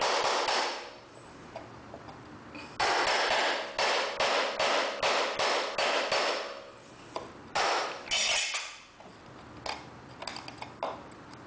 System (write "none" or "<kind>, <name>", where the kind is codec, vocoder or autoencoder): none